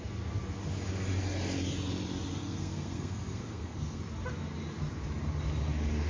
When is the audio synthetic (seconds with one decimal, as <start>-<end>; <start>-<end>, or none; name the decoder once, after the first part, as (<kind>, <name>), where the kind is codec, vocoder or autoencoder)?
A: 2.4-4.0 (codec, SNAC)